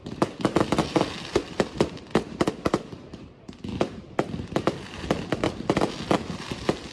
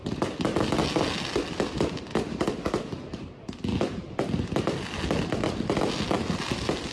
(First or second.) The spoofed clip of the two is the first